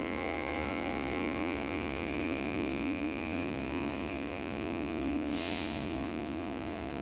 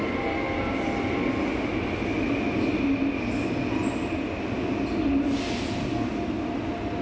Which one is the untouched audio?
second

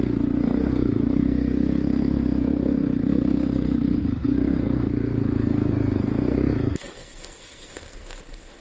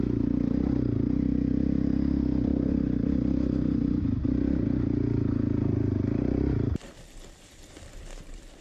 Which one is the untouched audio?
second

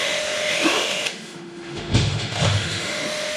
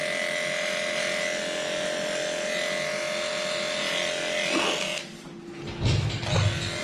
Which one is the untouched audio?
second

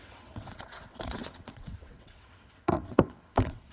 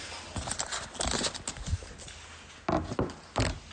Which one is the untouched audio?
second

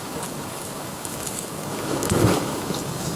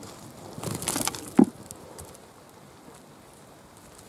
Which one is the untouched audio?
second